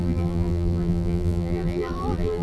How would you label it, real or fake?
fake